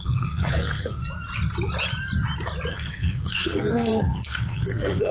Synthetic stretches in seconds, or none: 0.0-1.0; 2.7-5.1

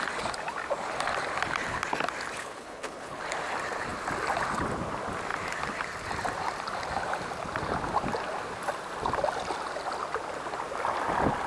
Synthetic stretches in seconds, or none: 2.4-3.2

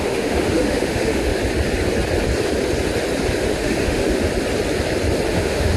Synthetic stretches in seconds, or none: 0.0-1.4; 3.4-4.3; 5.3-5.8

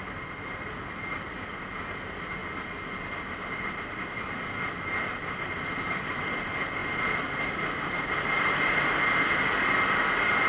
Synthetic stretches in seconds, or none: none

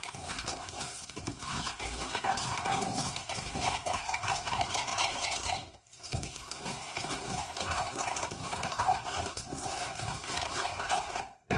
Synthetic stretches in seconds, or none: 0.0-11.6